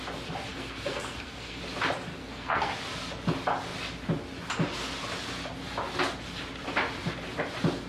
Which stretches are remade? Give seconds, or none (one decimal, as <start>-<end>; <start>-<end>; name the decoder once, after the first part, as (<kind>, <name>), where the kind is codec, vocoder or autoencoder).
0.5-1.6 (codec, SNAC); 2.1-2.7